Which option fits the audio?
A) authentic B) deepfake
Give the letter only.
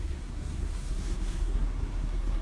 B